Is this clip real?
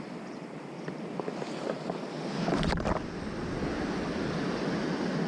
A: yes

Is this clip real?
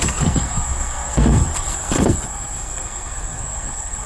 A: no